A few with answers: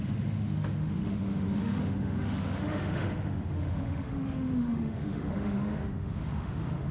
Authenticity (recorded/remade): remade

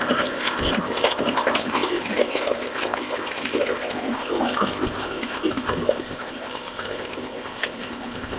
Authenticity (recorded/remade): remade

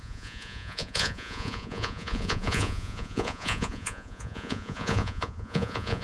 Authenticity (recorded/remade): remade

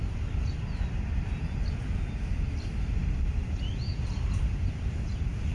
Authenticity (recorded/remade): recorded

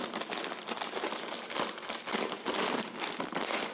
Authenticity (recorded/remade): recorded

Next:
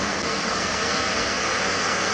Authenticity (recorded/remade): remade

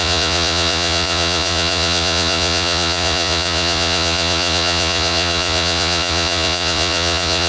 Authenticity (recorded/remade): remade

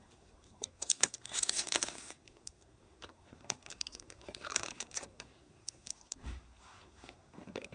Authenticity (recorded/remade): remade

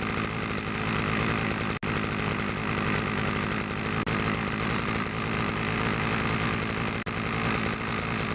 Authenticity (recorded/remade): recorded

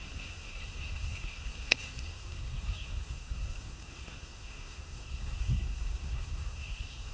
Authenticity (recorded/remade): remade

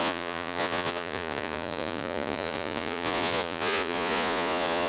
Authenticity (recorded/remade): remade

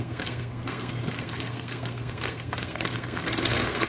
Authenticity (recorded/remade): remade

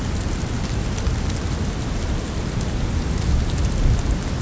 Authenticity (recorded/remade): recorded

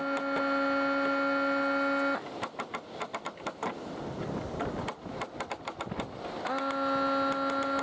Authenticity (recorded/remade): recorded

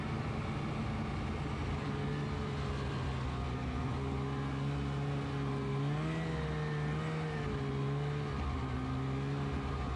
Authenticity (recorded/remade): recorded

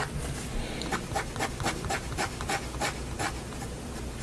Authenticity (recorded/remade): recorded